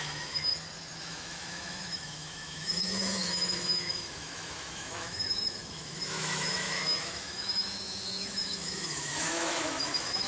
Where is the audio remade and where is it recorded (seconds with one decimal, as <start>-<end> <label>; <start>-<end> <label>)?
0.0-0.5 remade; 0.5-1.0 recorded; 1.0-10.3 remade